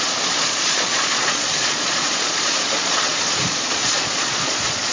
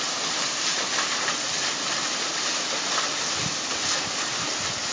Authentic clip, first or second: second